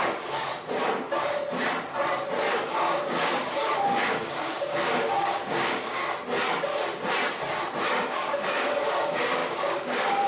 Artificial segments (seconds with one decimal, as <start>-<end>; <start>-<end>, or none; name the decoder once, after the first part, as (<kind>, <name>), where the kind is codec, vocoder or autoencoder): 0.0-0.5 (codec, DAC); 2.5-6.0; 8.1-10.3